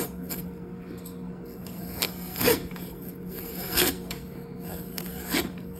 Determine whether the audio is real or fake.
fake